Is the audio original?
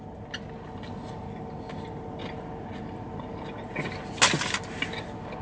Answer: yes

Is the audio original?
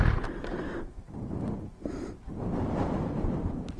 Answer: yes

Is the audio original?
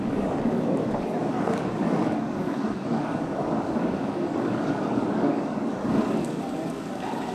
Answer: no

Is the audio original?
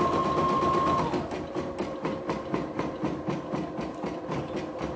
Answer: yes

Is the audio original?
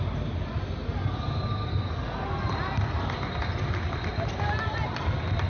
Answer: yes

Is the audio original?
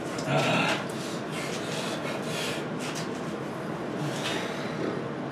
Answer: yes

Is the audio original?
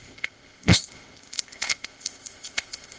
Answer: no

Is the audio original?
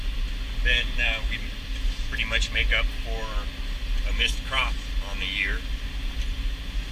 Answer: yes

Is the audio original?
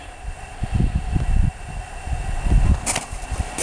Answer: yes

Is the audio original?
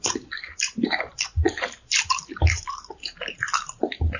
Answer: no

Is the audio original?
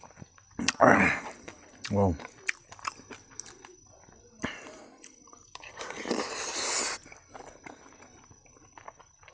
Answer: yes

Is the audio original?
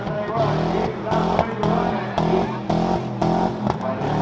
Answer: yes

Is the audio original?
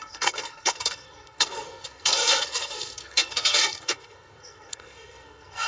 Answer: no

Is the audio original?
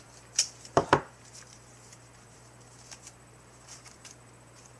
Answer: no